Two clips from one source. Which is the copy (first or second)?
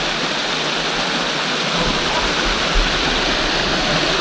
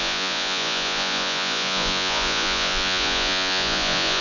second